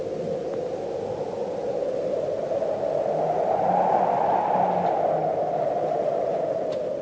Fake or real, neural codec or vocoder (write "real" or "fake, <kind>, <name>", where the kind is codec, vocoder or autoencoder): real